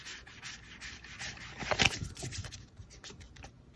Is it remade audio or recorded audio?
recorded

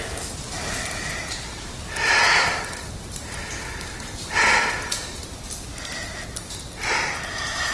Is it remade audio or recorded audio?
recorded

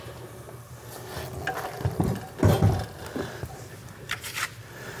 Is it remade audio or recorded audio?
recorded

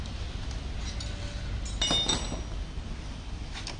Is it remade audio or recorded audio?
recorded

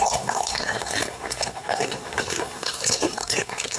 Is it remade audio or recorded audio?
remade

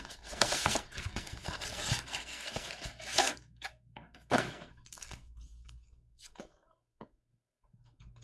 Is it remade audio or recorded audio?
remade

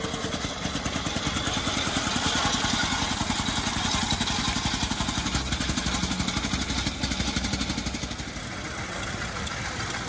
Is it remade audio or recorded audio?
recorded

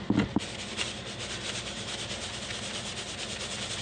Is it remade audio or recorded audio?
recorded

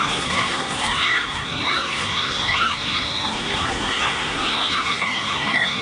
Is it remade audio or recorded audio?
remade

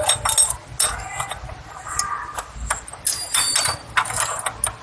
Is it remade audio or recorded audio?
recorded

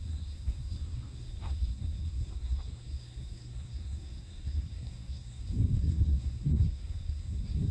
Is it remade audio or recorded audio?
remade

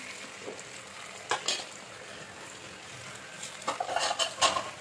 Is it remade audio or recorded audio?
recorded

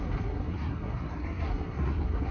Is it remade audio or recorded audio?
remade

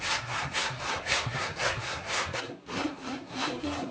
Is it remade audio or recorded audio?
remade